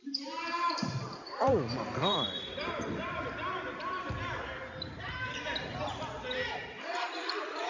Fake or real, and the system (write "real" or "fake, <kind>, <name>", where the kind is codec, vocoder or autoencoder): fake, vocoder, BigVGAN v2